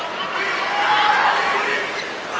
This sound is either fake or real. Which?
real